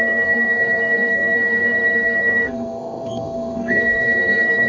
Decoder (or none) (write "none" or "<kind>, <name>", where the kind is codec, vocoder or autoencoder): codec, SNAC